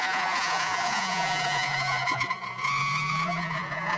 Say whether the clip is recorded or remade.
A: remade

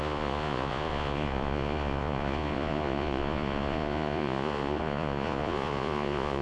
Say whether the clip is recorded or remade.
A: remade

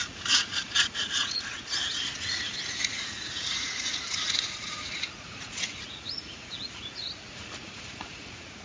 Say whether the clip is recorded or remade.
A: remade